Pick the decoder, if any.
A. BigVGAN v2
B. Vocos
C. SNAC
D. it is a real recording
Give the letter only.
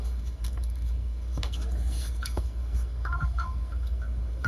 C